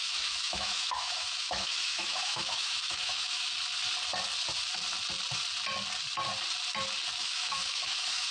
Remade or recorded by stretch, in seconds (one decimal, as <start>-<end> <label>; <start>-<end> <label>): 0.0-3.5 remade; 3.5-7.2 recorded; 7.2-8.3 remade